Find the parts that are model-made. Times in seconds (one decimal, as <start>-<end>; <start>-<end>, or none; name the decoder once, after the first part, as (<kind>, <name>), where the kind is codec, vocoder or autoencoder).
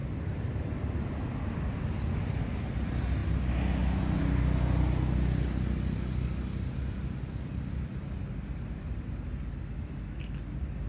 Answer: none